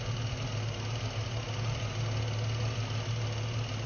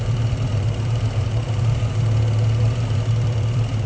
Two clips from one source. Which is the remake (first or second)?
second